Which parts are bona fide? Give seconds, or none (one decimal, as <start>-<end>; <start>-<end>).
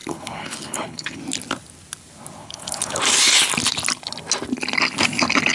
1.2-2.4; 3.0-5.5